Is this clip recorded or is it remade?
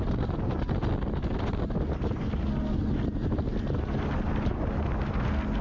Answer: recorded